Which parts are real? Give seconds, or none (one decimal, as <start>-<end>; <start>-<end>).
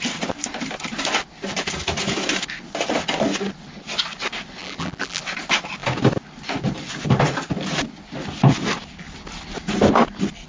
0.0-4.6; 5.2-10.5